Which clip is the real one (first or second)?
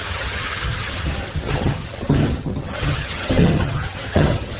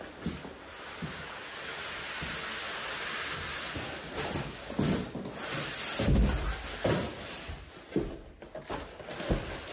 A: second